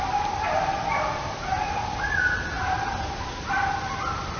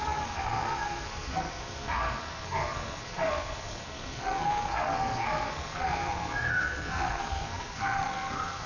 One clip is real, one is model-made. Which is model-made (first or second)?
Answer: second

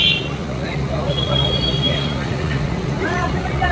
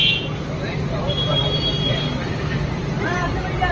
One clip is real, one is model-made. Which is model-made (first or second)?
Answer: first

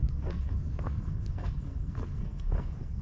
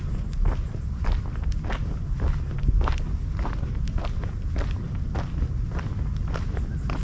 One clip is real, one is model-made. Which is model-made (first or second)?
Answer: first